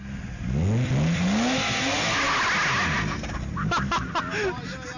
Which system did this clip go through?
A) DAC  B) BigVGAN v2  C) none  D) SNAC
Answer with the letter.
C